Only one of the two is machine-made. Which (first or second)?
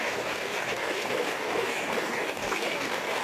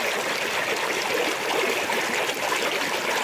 first